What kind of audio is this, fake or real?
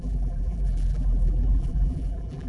fake